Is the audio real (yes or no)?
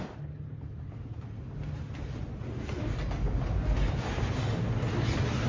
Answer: yes